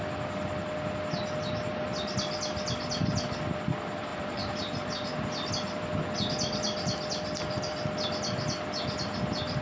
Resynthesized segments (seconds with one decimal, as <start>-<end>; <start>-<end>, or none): 4.1-5.5